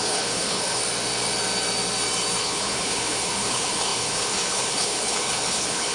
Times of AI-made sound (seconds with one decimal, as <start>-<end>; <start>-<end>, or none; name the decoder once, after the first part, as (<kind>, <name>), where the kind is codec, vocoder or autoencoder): 0.0-0.8 (codec, HILCodec); 2.4-5.9